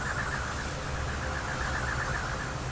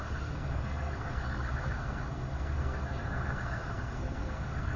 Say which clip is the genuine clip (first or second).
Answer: first